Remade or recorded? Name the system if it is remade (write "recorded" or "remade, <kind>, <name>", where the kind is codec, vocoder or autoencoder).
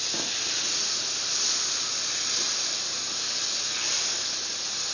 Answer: recorded